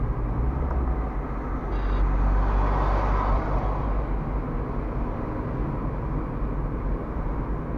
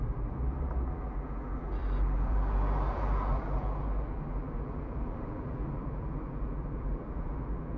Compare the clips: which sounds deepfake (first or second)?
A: second